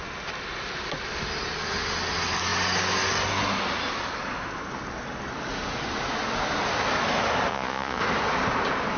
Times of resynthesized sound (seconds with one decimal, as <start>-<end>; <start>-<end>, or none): 7.5-8.0